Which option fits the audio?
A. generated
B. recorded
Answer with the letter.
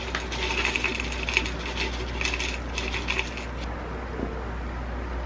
B